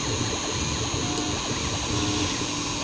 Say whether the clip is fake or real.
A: real